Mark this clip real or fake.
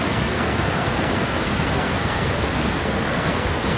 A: fake